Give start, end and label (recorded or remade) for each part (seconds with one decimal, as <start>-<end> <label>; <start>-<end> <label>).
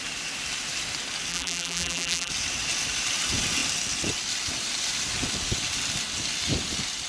0.0-1.3 recorded; 1.3-2.3 remade; 2.3-7.1 recorded